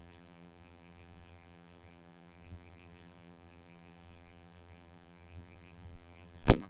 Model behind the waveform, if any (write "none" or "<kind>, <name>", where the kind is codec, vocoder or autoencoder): vocoder, BigVGAN v2